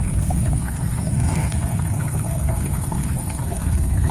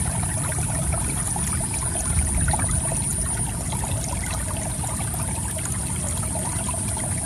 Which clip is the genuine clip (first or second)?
second